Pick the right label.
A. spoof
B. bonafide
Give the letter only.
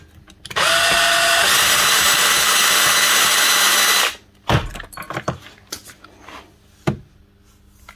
B